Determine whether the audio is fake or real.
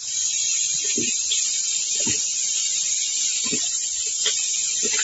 real